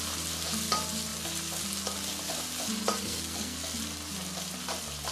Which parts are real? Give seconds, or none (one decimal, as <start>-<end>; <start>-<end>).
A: 0.0-2.9; 3.8-5.1